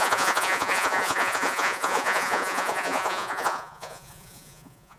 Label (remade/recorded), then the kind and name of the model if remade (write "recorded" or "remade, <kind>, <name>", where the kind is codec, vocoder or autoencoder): remade, vocoder, Vocos